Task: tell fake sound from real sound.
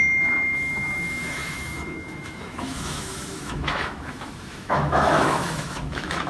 fake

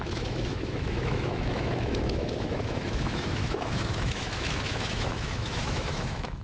fake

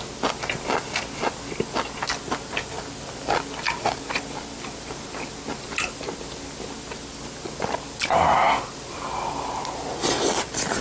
real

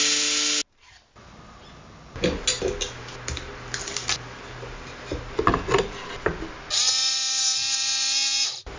real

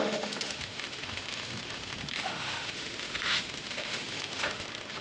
fake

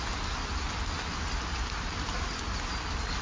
real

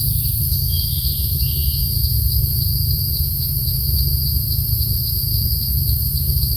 fake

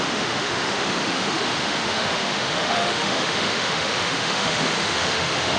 fake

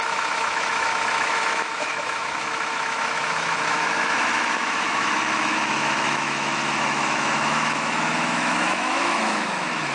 fake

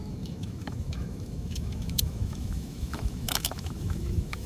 fake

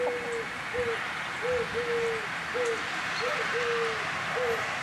real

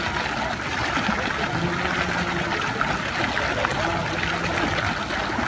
real